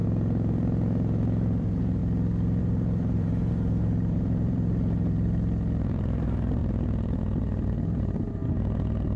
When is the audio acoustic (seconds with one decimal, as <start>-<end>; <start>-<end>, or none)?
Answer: 0.0-1.6; 2.0-2.6